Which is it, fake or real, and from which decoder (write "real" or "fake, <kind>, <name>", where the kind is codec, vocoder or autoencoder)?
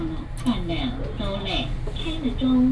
real